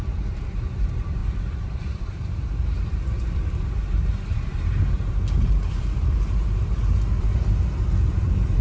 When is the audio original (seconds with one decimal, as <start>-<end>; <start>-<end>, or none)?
none